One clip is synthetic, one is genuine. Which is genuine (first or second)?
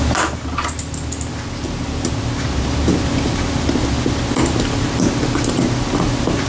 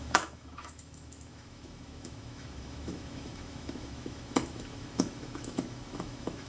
first